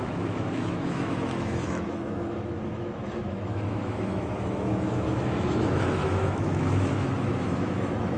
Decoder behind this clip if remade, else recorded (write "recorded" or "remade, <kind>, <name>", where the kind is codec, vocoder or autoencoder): remade, autoencoder, DAC-VAE